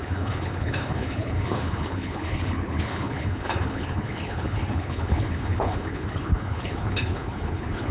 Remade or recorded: remade